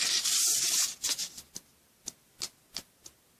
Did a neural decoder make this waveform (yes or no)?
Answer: no